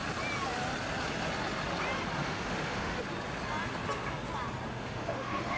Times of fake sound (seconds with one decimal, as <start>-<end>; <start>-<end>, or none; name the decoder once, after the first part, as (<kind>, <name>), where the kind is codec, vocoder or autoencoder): 2.2-3.0 (autoencoder, DAC-VAE); 4.7-5.6